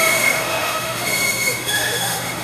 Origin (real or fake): fake